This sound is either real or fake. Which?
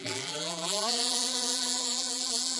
fake